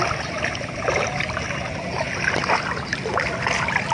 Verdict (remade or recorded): recorded